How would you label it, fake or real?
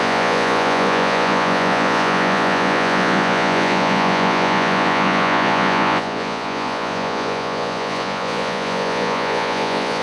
fake